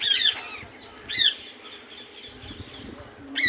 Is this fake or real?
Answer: real